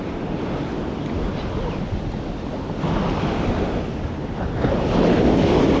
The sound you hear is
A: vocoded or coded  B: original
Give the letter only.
B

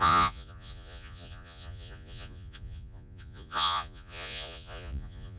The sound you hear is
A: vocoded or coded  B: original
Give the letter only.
A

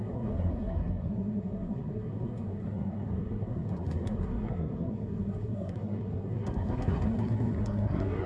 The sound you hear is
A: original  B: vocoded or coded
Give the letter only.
B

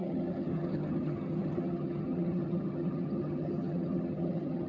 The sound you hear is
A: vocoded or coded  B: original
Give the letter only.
A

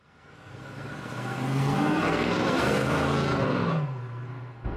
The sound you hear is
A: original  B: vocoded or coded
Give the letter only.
B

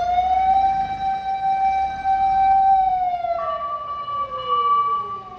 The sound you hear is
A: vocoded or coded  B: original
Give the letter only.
A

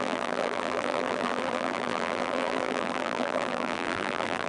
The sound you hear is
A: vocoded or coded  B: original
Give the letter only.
A